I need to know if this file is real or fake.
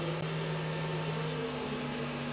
real